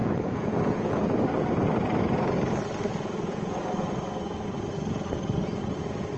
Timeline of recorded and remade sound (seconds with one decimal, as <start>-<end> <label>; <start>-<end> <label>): 0.0-1.0 remade; 1.0-2.9 recorded; 2.9-3.6 remade; 3.6-6.2 recorded